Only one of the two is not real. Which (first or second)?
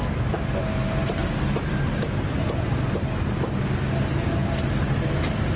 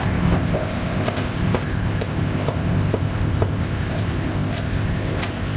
second